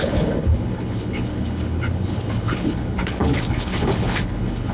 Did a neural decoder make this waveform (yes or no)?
yes